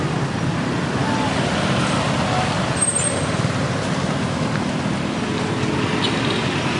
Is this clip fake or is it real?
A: real